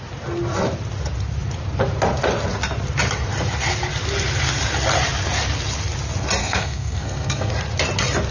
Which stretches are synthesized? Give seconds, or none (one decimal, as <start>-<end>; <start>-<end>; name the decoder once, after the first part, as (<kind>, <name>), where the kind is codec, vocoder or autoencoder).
6.4-7.5 (codec, SNAC)